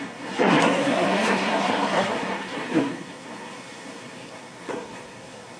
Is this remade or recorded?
remade